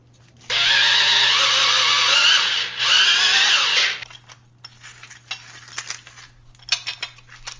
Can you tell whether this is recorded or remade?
recorded